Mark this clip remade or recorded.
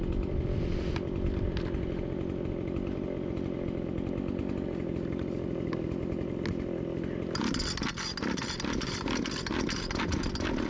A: recorded